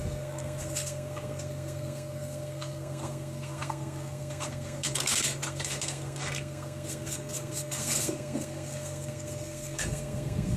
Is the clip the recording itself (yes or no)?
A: no